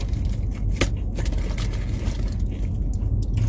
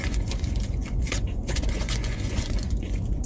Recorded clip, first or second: first